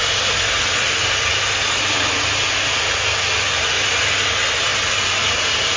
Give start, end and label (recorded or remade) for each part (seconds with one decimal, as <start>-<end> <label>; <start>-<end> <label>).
0.0-5.8 recorded